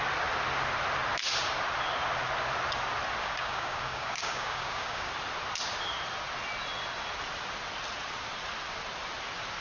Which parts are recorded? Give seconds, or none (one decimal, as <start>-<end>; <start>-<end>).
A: 0.0-3.2; 5.1-9.6